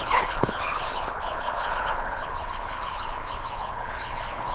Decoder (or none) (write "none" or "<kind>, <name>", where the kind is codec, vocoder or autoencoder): codec, HILCodec